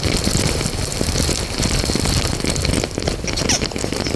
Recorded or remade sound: recorded